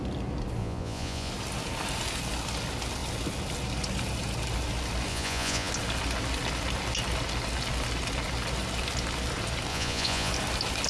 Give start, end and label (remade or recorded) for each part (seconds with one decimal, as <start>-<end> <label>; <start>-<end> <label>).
0.0-0.6 recorded; 0.6-1.3 remade; 1.3-5.1 recorded; 5.1-5.7 remade; 5.7-9.7 recorded; 9.7-10.3 remade; 10.3-10.9 recorded